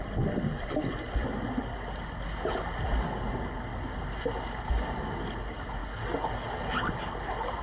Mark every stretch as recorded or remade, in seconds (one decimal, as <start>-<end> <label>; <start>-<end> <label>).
0.0-7.6 recorded